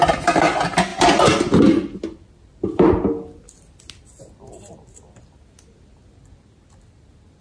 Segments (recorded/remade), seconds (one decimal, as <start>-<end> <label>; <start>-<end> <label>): 0.0-7.4 recorded